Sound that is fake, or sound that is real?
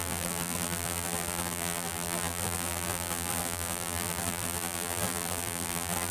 fake